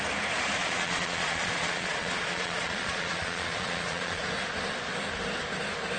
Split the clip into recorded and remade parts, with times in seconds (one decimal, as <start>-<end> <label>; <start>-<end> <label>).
0.0-0.6 recorded; 0.6-4.2 remade; 4.2-6.0 recorded